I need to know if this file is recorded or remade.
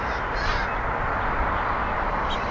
recorded